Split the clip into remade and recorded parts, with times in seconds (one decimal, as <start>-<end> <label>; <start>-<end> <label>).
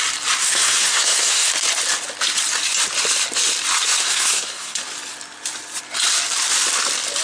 0.0-0.4 recorded; 0.4-1.5 remade; 1.5-4.0 recorded; 4.0-4.8 remade; 4.8-7.2 recorded